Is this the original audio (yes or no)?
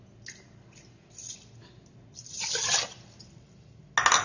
yes